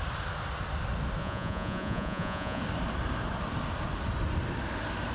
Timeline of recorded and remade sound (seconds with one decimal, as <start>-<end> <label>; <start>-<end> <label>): 0.0-1.2 recorded; 1.2-2.6 remade; 2.6-5.1 recorded